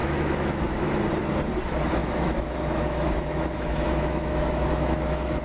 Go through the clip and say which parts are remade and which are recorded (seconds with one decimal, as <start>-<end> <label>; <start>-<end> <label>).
0.0-1.0 remade; 1.0-2.0 recorded; 2.0-5.4 remade